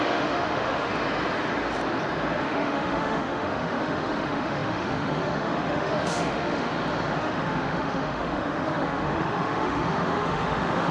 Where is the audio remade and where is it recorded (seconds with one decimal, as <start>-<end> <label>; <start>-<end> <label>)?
0.0-0.9 remade; 0.9-2.4 recorded; 2.4-6.7 remade; 6.7-7.2 recorded; 7.2-10.9 remade